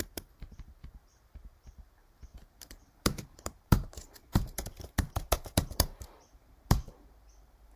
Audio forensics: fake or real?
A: fake